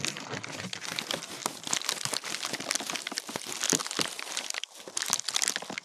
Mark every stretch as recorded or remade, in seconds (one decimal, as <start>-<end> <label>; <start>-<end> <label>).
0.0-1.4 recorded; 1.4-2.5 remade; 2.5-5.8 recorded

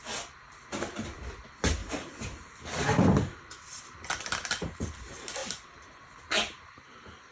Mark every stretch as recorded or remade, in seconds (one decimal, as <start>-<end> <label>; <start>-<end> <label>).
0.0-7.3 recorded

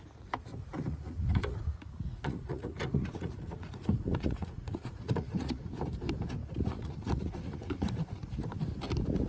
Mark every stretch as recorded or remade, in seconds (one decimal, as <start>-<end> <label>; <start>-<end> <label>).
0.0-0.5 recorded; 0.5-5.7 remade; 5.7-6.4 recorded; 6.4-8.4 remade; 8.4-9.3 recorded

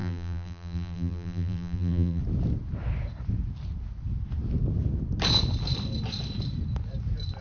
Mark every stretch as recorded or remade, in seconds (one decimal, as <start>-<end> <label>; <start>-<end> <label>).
0.0-2.2 remade; 2.2-7.4 recorded